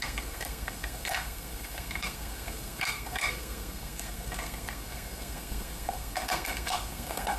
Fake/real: fake